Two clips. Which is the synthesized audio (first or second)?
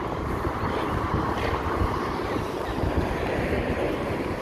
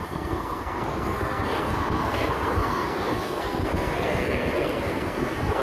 second